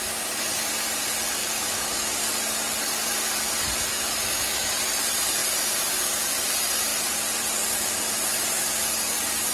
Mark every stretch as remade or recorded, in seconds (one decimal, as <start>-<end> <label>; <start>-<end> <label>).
0.0-1.4 recorded; 1.4-2.2 remade; 2.2-3.9 recorded; 3.9-4.7 remade; 4.7-9.5 recorded